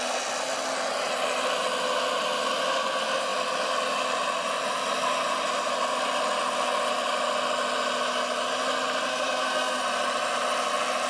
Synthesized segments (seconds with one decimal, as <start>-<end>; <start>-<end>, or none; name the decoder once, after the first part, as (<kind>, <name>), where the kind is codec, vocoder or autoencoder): 9.1-9.8 (codec, SNAC)